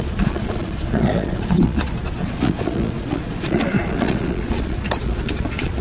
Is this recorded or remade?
remade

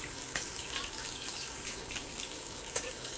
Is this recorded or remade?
remade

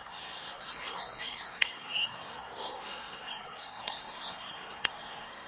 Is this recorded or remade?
remade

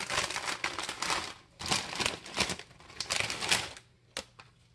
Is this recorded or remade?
recorded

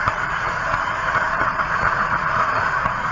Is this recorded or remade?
remade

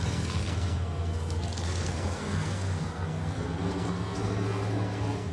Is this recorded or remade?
remade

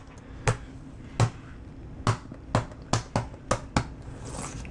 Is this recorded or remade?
recorded